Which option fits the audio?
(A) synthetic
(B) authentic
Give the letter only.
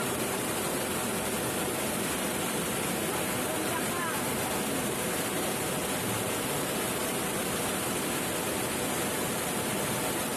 B